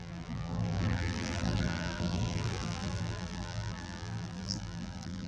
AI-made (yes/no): yes